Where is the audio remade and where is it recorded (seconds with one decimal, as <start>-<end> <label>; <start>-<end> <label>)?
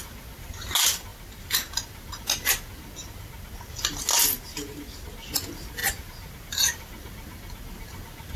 0.0-8.4 recorded